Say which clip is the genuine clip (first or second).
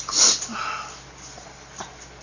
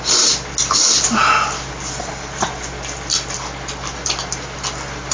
second